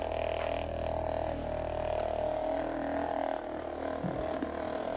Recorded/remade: recorded